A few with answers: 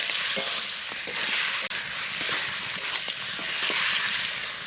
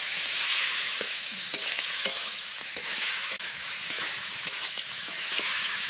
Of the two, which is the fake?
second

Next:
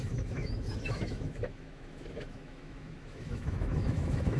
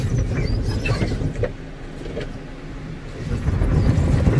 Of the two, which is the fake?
first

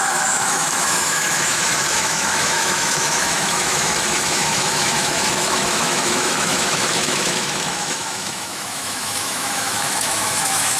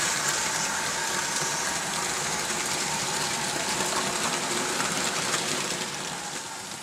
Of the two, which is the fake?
first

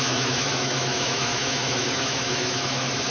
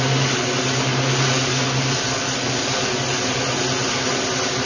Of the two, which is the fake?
first